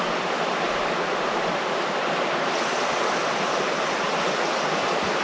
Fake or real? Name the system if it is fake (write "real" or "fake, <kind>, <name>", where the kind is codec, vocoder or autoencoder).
real